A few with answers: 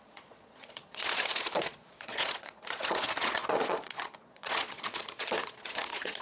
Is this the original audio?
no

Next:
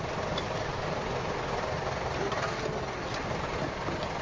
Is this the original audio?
yes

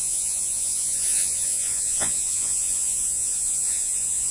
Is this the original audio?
no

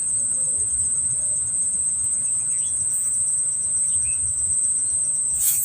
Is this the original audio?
no